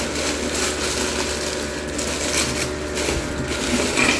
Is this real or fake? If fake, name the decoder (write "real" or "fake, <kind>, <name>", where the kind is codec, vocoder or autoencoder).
real